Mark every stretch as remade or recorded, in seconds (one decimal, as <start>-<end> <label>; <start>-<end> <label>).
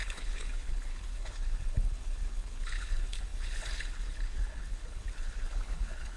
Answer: 0.0-6.2 remade